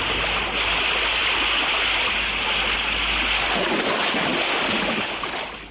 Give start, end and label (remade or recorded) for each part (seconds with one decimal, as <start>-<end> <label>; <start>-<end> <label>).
0.0-5.7 recorded